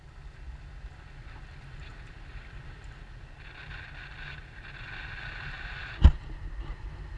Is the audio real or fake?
real